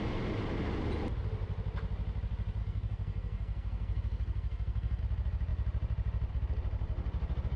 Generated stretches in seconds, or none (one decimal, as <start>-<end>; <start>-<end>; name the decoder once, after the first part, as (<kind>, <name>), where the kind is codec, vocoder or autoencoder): 2.6-5.0 (codec, SNAC)

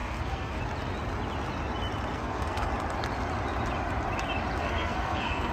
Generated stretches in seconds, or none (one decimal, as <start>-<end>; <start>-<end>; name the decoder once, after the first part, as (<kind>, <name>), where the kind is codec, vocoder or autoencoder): 0.0-0.6 (codec, SNAC); 2.1-2.7; 4.6-5.5

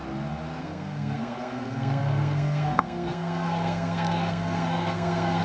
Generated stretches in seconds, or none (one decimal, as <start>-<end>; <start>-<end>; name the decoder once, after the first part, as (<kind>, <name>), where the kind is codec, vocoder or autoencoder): 0.6-5.4 (codec, SNAC)

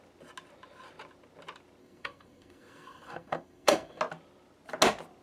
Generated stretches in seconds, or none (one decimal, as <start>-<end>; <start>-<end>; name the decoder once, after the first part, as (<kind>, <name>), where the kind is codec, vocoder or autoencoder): 1.8-4.0 (codec, SNAC)

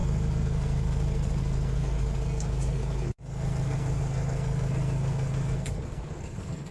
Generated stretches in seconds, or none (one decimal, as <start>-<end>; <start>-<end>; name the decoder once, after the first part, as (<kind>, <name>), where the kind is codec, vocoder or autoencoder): 0.0-6.7 (codec, SNAC)

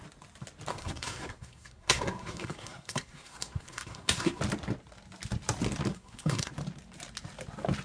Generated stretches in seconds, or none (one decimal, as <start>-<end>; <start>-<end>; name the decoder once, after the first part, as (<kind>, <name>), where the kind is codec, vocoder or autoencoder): 0.7-4.4 (codec, SNAC); 5.9-6.5

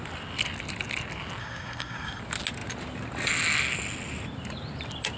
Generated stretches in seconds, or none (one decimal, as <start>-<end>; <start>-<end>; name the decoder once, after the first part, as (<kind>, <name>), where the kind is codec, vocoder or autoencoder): 1.4-2.2 (codec, SNAC)